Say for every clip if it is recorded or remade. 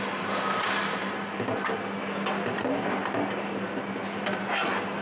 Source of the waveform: recorded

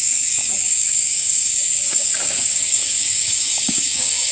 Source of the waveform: remade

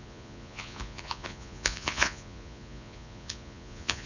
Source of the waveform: remade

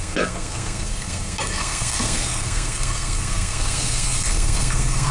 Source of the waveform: remade